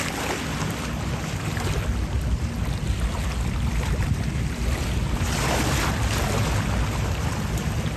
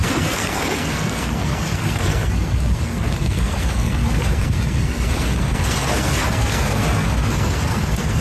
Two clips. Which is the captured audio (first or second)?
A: first